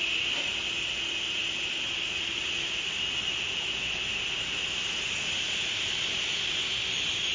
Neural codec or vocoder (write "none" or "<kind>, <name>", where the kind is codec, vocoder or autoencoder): none